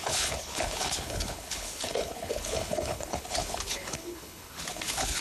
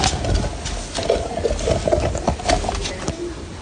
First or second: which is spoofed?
first